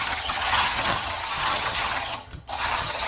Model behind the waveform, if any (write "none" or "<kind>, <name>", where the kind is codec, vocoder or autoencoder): vocoder, HiFi-GAN